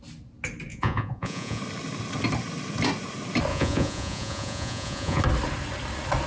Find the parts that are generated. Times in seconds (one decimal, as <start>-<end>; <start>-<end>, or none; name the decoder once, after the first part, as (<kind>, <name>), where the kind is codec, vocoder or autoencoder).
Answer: 0.7-1.6 (vocoder, Vocos); 3.5-5.2